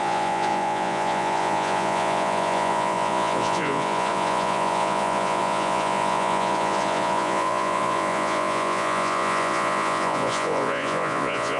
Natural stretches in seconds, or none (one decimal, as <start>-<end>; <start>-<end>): none